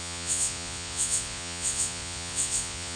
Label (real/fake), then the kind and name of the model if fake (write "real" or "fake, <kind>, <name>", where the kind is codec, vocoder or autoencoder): fake, vocoder, Vocos